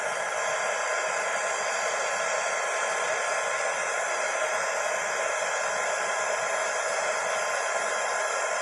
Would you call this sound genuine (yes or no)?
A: yes